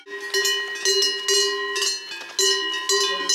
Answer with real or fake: real